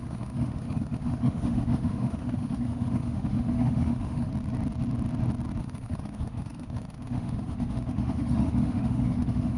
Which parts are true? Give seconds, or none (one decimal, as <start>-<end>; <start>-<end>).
4.3-5.6